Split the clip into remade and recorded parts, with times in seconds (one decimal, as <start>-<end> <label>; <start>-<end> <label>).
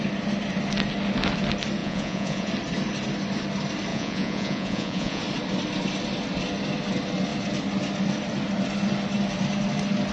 0.0-1.8 recorded; 1.8-2.5 remade; 2.5-3.9 recorded; 3.9-5.2 remade; 5.2-10.1 recorded